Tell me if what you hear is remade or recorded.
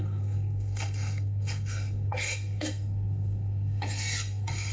remade